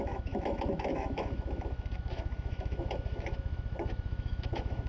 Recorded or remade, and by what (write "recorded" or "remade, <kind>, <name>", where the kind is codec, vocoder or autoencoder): remade, autoencoder, DAC-VAE